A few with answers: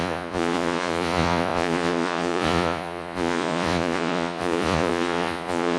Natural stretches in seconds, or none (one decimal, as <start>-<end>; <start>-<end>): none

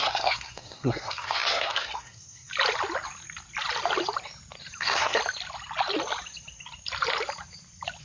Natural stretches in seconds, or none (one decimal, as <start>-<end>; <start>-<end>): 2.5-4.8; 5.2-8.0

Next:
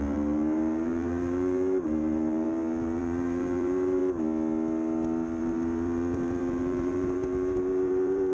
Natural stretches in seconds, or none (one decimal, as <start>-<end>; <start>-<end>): 4.0-5.4